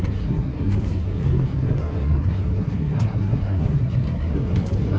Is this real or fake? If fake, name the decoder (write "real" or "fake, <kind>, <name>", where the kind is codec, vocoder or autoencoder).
fake, codec, SNAC